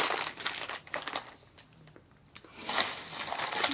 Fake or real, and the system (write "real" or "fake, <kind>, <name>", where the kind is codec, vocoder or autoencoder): real